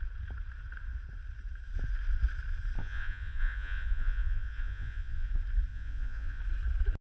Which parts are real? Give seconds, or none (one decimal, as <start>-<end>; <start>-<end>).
0.0-2.8; 5.3-5.7; 6.4-7.0